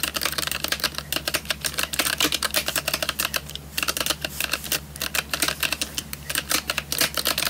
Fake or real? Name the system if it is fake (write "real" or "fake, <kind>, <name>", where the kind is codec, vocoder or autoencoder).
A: real